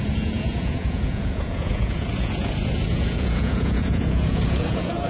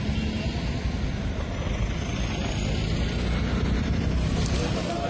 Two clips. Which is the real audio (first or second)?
second